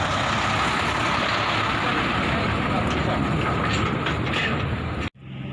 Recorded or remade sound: recorded